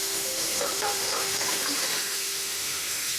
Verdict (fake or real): fake